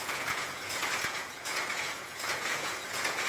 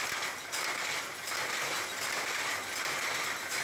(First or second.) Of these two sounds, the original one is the second